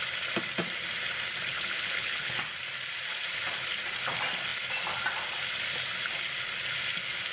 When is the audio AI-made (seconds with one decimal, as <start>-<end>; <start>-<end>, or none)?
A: 1.5-2.3